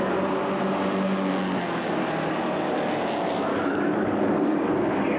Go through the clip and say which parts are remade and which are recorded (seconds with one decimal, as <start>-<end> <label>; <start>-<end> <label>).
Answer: 0.0-3.5 recorded; 3.5-4.7 remade; 4.7-5.2 recorded